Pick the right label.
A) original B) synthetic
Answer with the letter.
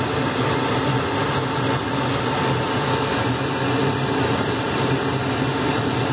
A